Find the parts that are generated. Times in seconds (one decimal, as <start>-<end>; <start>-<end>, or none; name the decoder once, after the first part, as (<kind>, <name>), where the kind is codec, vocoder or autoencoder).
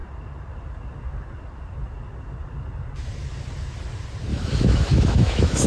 4.3-5.7 (autoencoder, DAC-VAE)